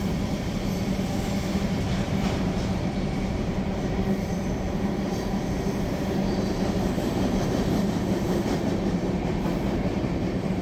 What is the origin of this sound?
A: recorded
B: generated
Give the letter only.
B